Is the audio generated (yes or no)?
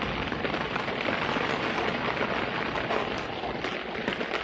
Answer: no